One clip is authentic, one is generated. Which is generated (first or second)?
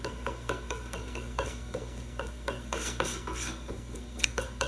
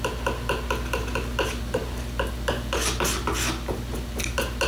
first